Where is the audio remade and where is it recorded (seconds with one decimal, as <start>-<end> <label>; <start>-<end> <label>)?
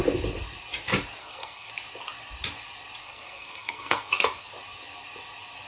0.0-1.2 recorded; 1.2-1.7 remade; 1.7-3.0 recorded; 3.0-4.5 remade; 4.5-5.7 recorded